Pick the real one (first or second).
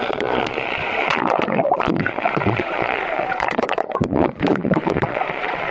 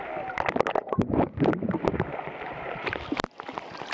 second